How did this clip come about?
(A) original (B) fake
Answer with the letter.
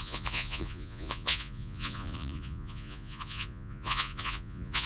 B